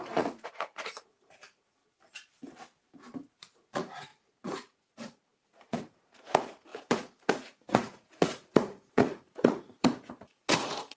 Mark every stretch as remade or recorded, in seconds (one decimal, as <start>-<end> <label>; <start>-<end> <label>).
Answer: 0.0-1.8 remade; 1.8-3.4 recorded; 3.4-11.0 remade